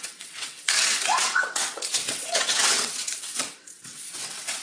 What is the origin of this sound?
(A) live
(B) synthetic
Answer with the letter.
B